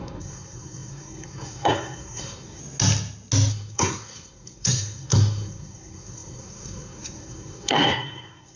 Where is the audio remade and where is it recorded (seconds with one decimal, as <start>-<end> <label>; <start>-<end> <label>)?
0.0-2.6 remade; 2.6-3.5 recorded; 3.5-8.6 remade